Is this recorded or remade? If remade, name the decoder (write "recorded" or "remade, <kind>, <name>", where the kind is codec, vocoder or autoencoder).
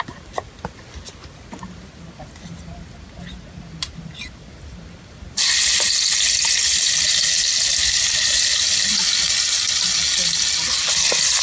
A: recorded